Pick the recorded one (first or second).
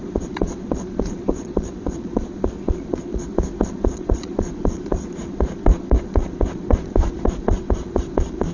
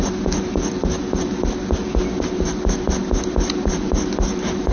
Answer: second